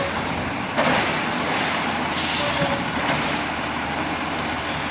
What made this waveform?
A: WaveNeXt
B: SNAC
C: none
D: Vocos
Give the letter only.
C